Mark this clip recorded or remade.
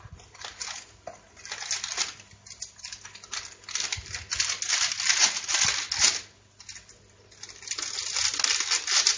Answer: recorded